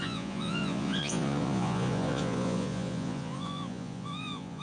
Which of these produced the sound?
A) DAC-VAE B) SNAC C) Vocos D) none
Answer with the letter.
C